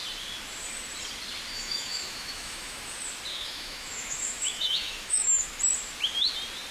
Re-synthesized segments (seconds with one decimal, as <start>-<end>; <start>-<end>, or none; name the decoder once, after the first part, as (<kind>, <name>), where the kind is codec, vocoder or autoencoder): 1.5-2.9 (autoencoder, DAC-VAE); 3.3-5.6